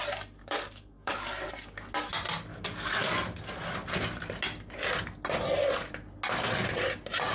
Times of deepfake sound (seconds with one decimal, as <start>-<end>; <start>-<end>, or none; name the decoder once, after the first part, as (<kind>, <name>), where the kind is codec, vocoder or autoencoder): 0.4-1.5 (codec, DAC); 2.5-3.1